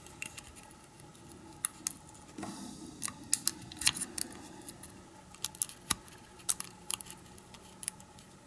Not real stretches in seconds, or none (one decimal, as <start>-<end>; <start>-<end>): 0.0-1.1; 6.2-8.5